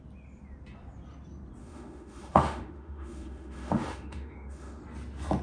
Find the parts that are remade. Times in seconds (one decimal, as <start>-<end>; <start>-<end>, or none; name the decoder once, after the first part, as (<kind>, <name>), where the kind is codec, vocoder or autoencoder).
1.6-4.8 (autoencoder, DAC-VAE)